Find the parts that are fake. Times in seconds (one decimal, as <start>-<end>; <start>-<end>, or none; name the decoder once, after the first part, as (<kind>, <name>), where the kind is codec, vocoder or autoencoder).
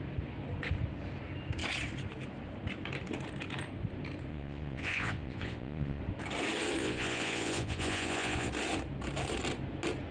4.3-6.0 (vocoder, Vocos); 6.8-8.5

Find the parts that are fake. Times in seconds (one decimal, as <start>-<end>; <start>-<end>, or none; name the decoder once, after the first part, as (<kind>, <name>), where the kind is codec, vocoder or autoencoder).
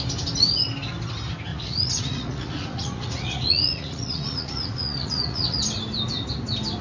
1.5-5.6 (vocoder, Vocos)